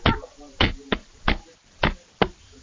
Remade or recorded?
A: recorded